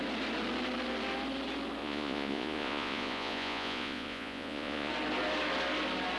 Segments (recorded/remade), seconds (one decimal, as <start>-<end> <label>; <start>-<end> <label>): 0.0-1.8 recorded; 1.8-4.9 remade; 4.9-6.2 recorded